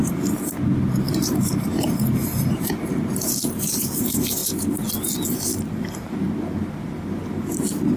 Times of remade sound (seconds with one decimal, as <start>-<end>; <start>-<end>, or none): 0.0-3.5